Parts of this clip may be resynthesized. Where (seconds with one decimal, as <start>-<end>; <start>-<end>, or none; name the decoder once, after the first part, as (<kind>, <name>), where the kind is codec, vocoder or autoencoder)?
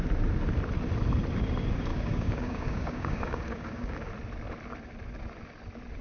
1.9-4.1 (codec, DAC)